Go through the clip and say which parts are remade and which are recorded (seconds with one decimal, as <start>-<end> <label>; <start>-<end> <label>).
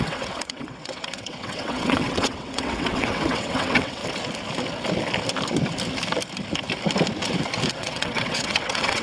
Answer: 0.0-4.0 remade; 4.0-7.7 recorded; 7.7-9.0 remade